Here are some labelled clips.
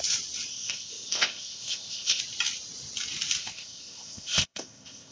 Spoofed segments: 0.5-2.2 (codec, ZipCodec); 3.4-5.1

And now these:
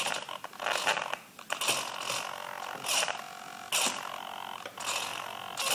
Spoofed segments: none

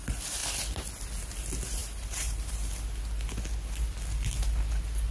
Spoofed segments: 1.8-2.7 (vocoder, BigVGAN v2)

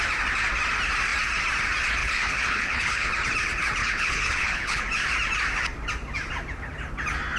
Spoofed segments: 2.0-3.1 (codec, HILCodec); 3.8-4.8

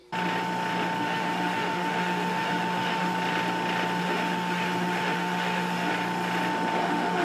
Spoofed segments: 1.0-3.1 (autoencoder, DAC-VAE); 4.0-5.9; 6.8-7.2

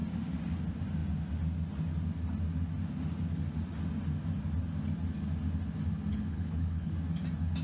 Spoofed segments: 6.1-6.9 (codec, HILCodec)

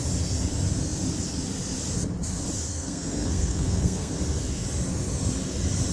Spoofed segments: 2.7-4.1 (codec, SNAC)

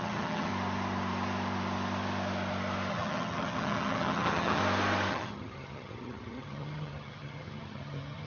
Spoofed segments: 0.0-0.5 (vocoder, HiFi-GAN); 2.9-4.6; 5.1-8.3